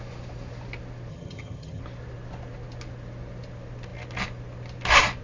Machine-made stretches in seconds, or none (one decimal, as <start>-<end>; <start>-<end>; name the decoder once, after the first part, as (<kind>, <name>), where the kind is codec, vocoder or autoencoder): 1.1-1.8 (vocoder, HiFi-GAN)